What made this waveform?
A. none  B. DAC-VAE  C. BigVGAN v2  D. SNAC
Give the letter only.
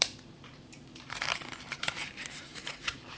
C